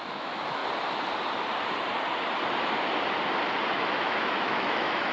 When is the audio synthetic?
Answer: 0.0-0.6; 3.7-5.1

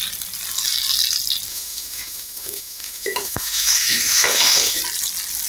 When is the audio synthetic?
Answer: 1.5-4.8

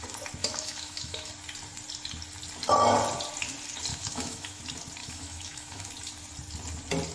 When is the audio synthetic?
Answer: 0.4-1.3; 3.9-4.6; 5.0-5.9

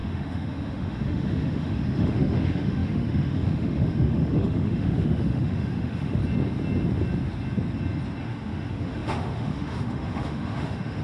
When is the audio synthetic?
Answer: 0.0-6.2; 8.2-11.0